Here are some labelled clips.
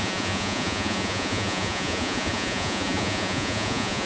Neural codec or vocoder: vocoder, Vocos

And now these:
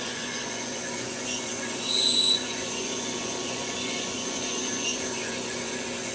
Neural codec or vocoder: vocoder, Vocos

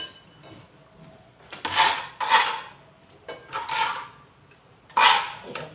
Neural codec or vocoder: none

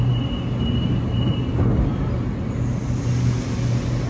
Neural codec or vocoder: none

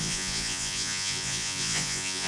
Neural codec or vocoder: vocoder, Vocos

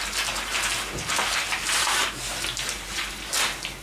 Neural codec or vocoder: none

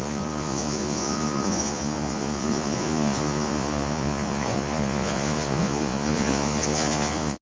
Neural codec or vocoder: vocoder, Vocos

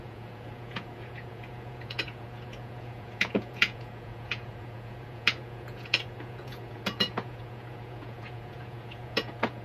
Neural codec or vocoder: vocoder, Vocos